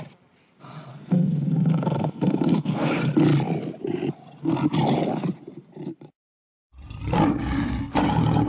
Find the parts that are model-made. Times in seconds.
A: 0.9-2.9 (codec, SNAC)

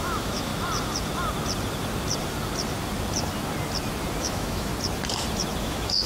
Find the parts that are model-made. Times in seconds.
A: 0.0-0.5 (autoencoder, DAC-VAE); 4.2-4.7; 5.6-6.1

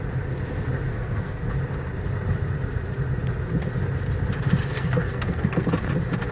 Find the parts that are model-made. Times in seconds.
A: 0.9-1.5 (codec, SNAC); 4.6-5.7

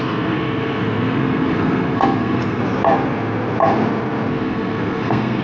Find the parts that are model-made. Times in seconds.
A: 0.0-2.6 (codec, SNAC); 4.3-5.4